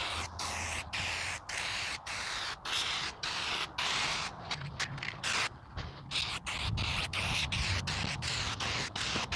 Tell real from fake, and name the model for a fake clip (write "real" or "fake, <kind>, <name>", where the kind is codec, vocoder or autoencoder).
real